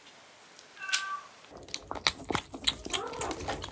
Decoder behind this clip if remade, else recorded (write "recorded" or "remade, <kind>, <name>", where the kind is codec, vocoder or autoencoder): recorded